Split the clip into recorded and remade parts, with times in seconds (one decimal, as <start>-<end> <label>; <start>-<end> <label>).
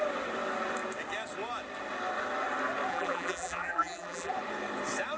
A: 0.0-2.9 recorded; 2.9-4.3 remade; 4.3-5.2 recorded